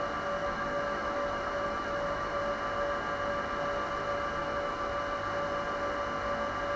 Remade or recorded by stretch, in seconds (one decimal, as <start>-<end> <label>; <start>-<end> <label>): 0.0-0.4 recorded; 0.4-2.4 remade; 2.4-4.4 recorded; 4.4-5.0 remade; 5.0-6.8 recorded